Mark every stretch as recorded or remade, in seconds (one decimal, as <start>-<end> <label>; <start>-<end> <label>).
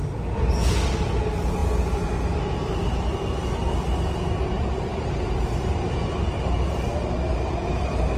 0.0-8.2 recorded